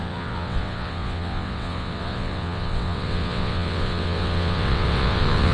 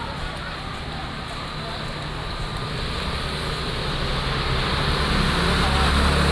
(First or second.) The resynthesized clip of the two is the first